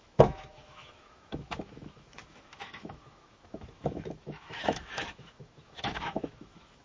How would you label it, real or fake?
fake